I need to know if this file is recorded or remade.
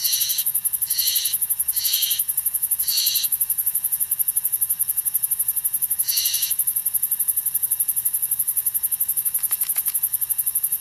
remade